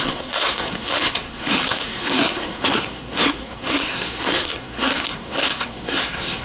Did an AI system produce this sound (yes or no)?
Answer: yes